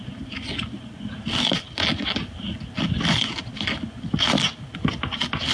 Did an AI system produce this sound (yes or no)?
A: no